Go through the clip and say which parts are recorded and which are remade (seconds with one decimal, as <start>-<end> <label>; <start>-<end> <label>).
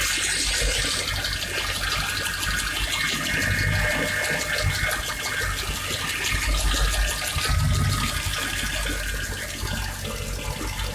0.0-10.9 recorded